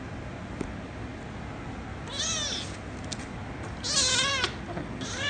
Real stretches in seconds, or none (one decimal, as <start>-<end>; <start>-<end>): 0.0-5.3